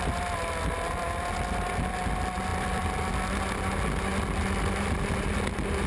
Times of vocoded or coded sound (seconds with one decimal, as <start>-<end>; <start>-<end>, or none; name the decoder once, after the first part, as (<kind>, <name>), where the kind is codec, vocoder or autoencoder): none